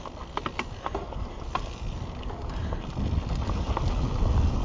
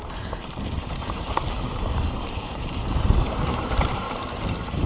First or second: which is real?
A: first